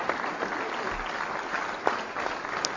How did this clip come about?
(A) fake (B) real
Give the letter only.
B